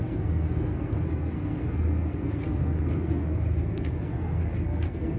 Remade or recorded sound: remade